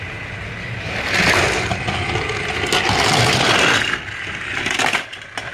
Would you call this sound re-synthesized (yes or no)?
no